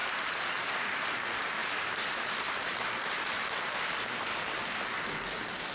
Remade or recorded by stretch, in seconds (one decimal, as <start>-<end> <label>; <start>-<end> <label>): 0.0-0.5 remade; 0.5-1.6 recorded; 1.6-4.7 remade; 4.7-5.7 recorded